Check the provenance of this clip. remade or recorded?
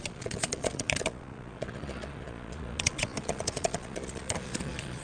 remade